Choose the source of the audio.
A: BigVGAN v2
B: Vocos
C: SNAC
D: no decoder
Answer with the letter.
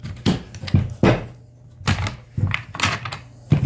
D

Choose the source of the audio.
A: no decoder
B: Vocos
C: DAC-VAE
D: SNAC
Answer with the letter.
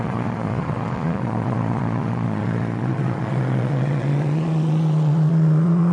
B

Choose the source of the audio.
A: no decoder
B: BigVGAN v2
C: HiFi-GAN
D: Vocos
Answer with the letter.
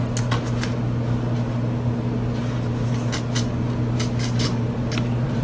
A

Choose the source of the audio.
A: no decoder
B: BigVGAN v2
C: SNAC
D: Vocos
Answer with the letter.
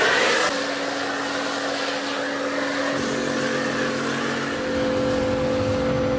A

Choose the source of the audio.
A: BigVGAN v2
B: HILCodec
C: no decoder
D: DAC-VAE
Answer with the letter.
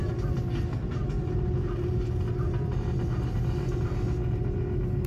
C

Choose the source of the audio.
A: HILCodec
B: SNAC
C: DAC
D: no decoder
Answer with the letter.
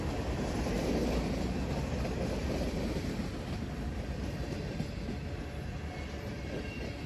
D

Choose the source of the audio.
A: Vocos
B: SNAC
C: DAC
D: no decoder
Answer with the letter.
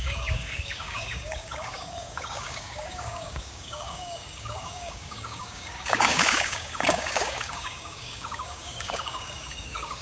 C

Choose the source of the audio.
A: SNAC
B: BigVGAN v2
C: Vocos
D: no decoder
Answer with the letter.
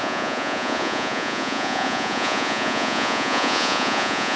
C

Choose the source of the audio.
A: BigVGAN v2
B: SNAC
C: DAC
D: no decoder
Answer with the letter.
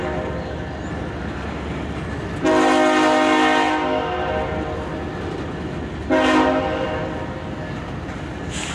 D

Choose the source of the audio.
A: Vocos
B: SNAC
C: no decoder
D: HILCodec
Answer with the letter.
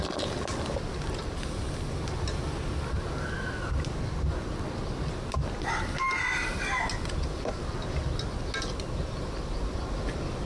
C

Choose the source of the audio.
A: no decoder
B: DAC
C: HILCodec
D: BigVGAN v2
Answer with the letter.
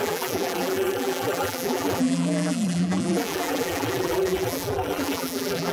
D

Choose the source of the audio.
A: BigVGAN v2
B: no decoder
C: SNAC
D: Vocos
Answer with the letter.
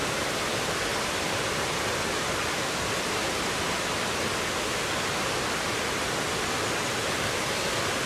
B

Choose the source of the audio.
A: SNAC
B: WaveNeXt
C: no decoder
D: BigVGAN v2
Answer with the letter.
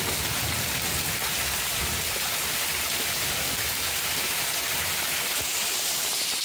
D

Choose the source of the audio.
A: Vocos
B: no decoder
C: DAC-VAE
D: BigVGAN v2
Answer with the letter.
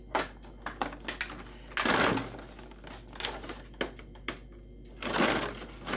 B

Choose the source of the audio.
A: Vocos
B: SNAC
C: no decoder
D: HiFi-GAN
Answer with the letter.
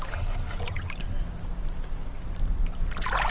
C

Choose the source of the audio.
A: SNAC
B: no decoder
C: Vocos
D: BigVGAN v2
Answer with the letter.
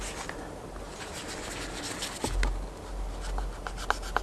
B